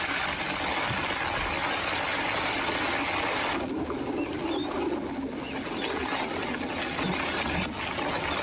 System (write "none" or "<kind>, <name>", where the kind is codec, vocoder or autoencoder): none